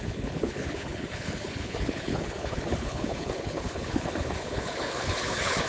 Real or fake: fake